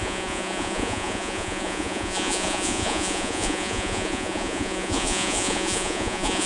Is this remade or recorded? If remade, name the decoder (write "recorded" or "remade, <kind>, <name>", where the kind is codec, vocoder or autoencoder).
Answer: remade, vocoder, Vocos